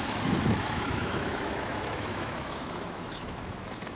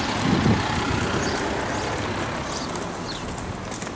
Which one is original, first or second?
second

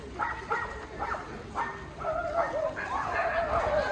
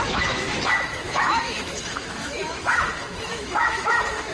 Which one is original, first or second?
first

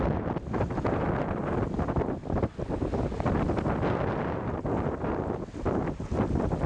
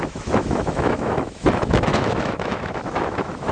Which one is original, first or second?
first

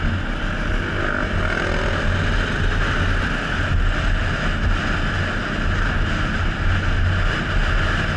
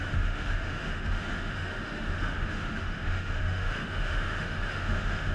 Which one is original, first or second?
first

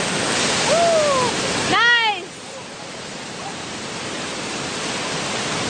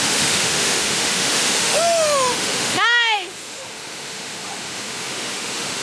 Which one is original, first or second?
first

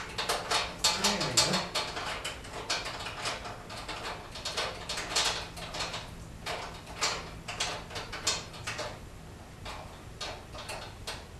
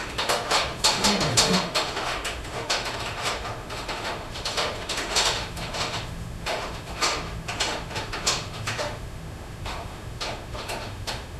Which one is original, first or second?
first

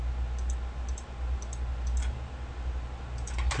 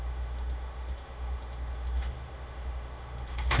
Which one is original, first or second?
first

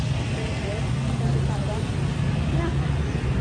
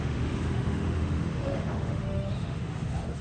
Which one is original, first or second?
first